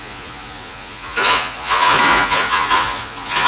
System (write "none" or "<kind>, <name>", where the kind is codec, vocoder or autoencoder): vocoder, Vocos